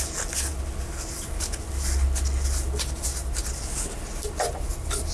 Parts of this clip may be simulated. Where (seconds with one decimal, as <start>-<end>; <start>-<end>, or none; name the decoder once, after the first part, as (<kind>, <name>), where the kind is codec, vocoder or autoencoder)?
none